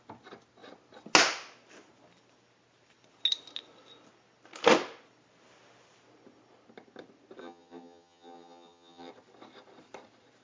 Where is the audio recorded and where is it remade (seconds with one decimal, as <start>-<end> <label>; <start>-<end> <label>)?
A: 0.0-7.4 recorded; 7.4-9.1 remade; 9.1-10.4 recorded